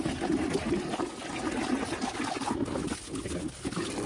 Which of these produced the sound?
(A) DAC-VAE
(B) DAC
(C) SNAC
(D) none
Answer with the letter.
D